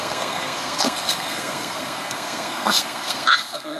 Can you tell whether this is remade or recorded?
remade